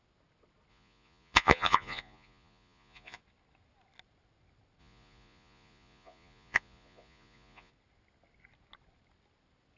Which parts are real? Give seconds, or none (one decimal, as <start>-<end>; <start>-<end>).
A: 0.0-0.7; 3.2-4.8; 7.7-9.8